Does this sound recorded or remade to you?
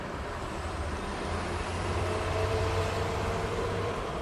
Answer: remade